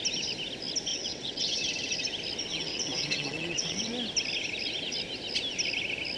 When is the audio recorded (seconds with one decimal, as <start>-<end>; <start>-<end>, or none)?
0.0-0.9; 1.6-2.5; 3.9-6.2